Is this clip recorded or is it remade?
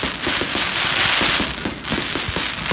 recorded